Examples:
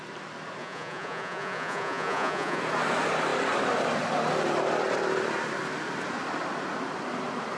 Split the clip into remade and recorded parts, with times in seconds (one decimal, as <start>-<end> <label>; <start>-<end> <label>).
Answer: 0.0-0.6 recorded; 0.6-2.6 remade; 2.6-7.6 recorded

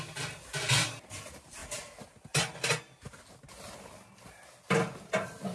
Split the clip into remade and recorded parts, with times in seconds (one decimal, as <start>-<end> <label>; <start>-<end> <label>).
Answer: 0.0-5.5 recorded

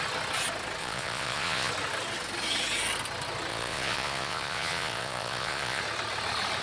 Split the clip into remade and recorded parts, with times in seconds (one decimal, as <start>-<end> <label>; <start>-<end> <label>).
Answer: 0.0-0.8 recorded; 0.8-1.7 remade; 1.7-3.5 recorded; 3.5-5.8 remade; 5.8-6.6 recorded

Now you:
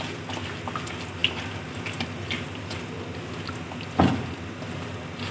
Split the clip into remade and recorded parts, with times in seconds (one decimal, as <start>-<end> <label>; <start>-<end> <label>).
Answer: 0.0-5.3 recorded

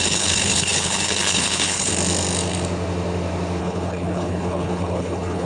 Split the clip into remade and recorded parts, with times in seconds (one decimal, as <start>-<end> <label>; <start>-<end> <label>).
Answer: 0.0-1.9 remade; 1.9-3.6 recorded; 3.6-5.5 remade

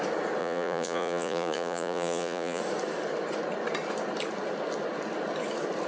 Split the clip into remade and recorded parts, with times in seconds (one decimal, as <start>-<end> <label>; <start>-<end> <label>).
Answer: 0.0-0.4 recorded; 0.4-2.6 remade; 2.6-5.9 recorded

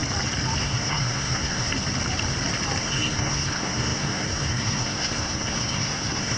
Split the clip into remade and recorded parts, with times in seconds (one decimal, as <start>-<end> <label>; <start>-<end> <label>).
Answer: 0.0-0.6 recorded; 0.6-1.7 remade; 1.7-2.8 recorded; 2.8-6.4 remade

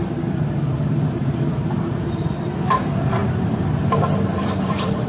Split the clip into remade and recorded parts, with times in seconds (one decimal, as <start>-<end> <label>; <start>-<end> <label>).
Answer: 0.0-5.1 remade